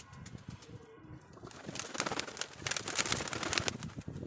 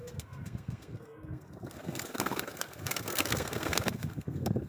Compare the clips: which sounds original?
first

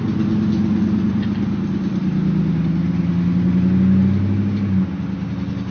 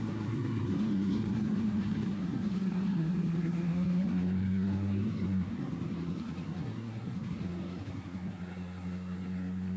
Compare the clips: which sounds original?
first